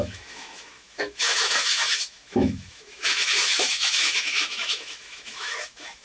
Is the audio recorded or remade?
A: remade